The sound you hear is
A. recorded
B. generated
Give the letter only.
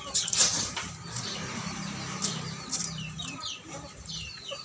B